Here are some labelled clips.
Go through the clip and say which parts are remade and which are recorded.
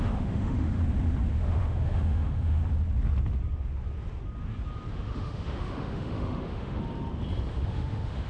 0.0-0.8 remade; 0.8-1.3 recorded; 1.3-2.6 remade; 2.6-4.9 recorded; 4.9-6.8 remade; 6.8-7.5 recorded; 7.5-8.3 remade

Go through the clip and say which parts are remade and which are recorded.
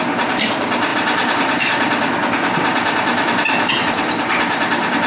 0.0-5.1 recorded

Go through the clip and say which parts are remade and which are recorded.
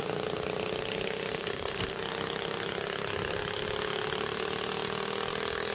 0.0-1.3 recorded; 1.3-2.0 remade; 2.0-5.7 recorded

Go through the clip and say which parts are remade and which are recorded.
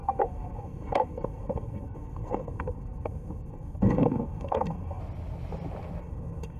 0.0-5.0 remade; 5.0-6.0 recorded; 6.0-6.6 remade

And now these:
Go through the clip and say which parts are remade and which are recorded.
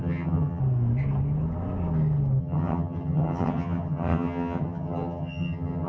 0.0-0.6 remade; 0.6-2.4 recorded; 2.4-5.9 remade